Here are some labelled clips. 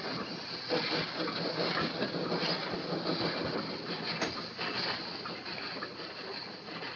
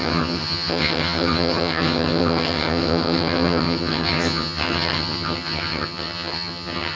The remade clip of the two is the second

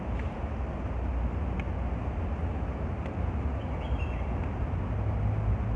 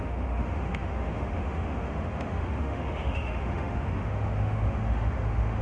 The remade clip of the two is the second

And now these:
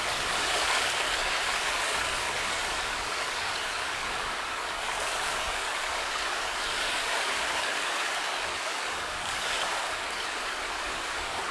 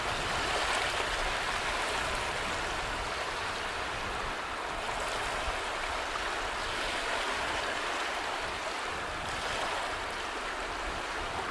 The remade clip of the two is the first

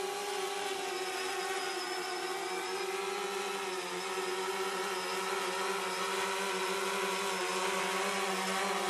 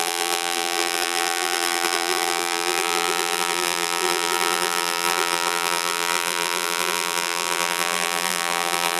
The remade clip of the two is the second